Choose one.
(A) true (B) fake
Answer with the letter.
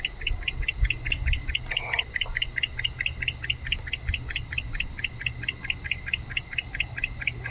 A